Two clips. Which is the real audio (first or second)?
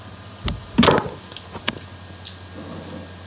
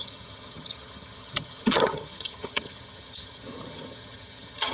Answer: first